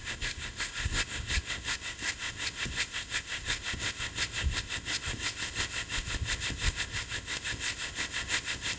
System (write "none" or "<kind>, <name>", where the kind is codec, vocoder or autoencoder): codec, ZipCodec